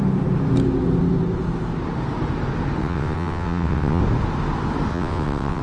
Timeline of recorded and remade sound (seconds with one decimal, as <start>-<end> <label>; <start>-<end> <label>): 0.0-2.8 recorded; 2.8-4.0 remade; 4.0-4.9 recorded; 4.9-5.6 remade